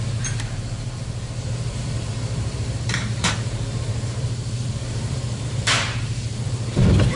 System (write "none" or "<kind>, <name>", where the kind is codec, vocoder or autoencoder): vocoder, BigVGAN v2